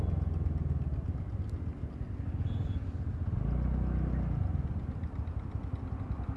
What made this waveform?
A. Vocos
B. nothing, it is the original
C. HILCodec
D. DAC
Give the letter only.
B